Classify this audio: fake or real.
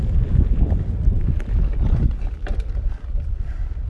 real